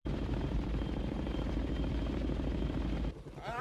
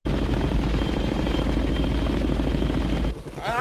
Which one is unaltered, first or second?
second